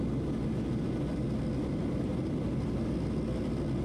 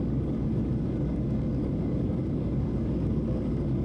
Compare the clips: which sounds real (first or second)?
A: first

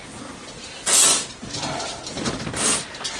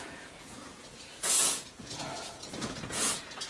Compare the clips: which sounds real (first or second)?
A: first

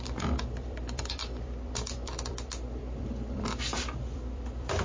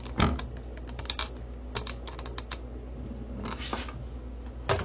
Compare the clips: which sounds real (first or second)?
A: second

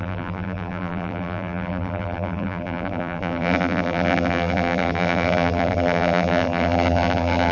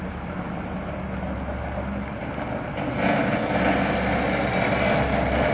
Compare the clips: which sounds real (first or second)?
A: second